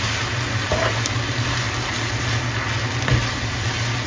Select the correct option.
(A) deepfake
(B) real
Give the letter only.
B